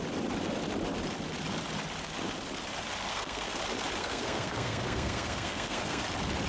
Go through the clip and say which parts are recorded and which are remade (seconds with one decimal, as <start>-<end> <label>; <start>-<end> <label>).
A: 0.0-3.1 recorded; 3.1-3.6 remade; 3.6-4.0 recorded; 4.0-6.0 remade; 6.0-6.5 recorded